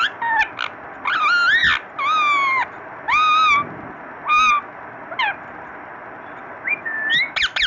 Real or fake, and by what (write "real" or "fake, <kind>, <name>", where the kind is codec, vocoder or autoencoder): real